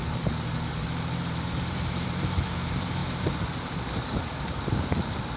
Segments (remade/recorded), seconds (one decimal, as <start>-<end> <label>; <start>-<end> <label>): 0.0-5.4 remade